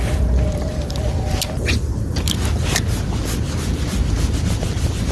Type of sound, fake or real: real